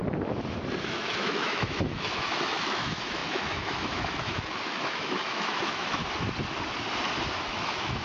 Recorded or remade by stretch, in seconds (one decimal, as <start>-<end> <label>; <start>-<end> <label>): 0.0-0.8 recorded; 0.8-6.0 remade; 6.0-7.4 recorded; 7.4-8.0 remade